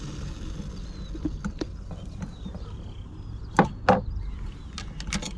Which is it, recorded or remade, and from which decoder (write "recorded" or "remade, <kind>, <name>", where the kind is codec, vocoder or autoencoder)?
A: recorded